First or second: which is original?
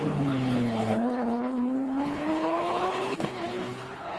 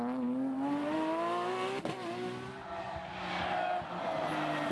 second